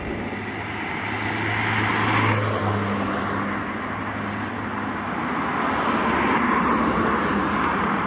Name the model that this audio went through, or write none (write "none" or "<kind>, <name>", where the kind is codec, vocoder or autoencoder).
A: none